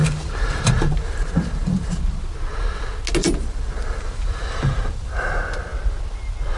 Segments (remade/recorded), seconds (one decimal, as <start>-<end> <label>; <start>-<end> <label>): 0.0-2.0 remade; 2.0-3.2 recorded; 3.2-5.3 remade; 5.3-6.6 recorded